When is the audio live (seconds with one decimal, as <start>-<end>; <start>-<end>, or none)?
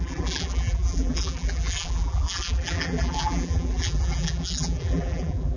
none